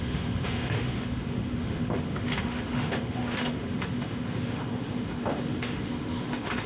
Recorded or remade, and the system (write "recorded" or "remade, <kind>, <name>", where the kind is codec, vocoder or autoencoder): remade, autoencoder, DAC-VAE